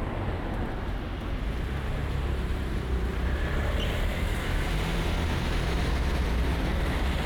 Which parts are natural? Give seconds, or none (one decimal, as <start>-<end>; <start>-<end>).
0.0-2.0; 4.8-7.3